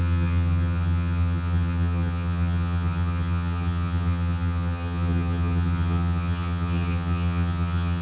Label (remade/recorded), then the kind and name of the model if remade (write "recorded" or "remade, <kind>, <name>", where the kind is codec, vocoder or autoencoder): remade, vocoder, HiFi-GAN